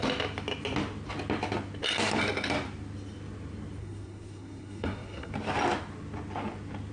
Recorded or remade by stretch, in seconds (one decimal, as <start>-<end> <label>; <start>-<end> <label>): 0.0-3.8 recorded; 3.8-5.3 remade; 5.3-6.9 recorded